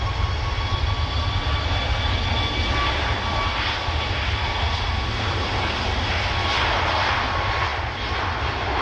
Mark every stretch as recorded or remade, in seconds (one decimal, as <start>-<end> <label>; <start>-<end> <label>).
0.0-8.8 recorded